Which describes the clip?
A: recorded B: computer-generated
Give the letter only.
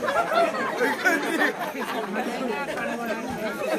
A